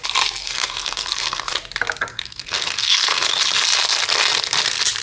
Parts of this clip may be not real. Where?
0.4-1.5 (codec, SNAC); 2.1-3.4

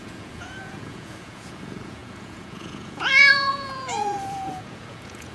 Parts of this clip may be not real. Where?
0.0-5.3 (vocoder, Vocos)

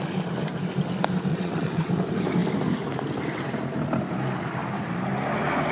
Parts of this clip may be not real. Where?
1.3-1.9 (vocoder, WaveNeXt)